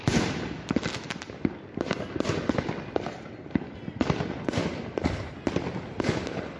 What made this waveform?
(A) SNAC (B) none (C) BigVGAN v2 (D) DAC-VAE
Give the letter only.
B